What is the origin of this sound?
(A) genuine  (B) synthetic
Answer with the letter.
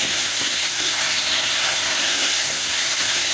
B